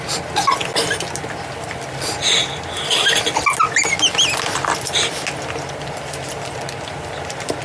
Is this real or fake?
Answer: real